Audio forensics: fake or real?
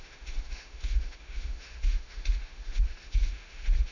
fake